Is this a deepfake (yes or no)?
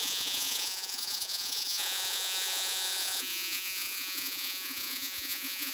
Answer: yes